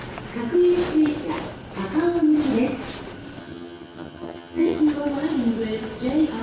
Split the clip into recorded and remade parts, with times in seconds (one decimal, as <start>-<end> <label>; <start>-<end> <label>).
0.0-3.4 recorded; 3.4-4.8 remade; 4.8-6.4 recorded